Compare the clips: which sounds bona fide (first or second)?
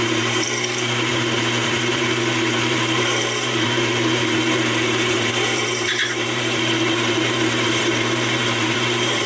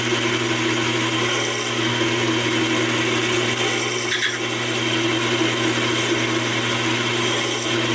second